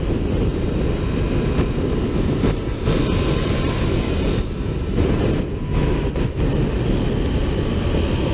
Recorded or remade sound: recorded